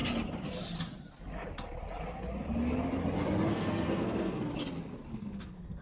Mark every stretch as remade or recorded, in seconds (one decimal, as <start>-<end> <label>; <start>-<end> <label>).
0.0-3.5 recorded; 3.5-4.5 remade; 4.5-5.1 recorded; 5.1-5.8 remade